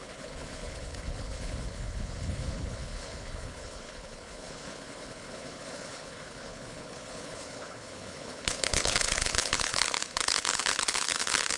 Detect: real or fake fake